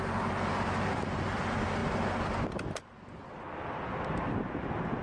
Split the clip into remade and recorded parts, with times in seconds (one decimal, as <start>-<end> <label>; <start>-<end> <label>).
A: 0.0-5.0 recorded